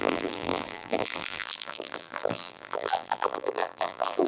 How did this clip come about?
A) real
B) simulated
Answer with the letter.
B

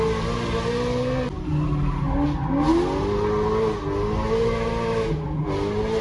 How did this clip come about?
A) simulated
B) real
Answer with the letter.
B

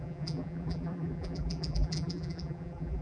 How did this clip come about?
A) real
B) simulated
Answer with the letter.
B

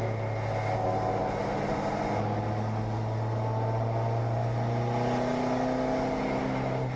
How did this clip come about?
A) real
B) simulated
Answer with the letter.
A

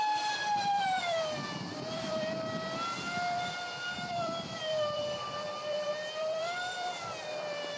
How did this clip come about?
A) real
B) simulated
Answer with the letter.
B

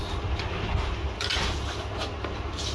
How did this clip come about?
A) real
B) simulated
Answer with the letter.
A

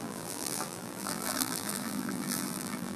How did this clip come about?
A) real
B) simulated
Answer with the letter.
B